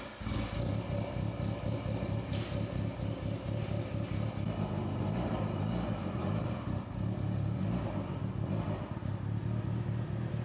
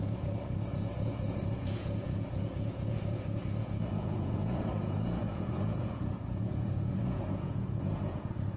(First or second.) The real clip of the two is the first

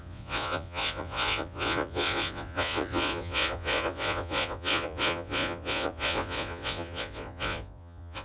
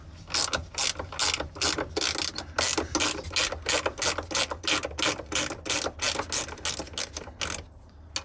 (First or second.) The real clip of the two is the second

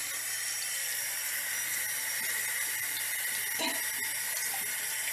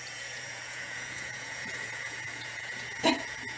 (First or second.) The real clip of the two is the first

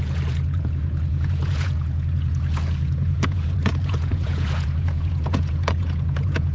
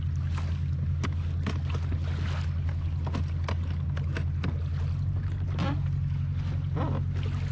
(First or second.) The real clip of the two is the second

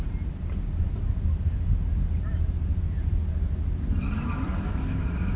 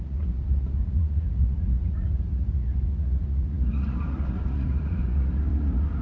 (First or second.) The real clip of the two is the first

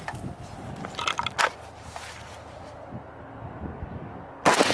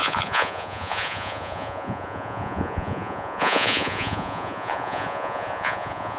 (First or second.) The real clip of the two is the first